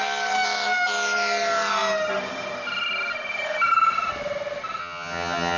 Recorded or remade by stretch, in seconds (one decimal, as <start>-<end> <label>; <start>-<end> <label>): 0.0-4.8 recorded; 4.8-5.6 remade